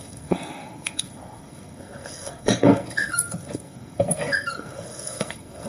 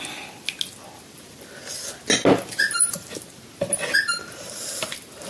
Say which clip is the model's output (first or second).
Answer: first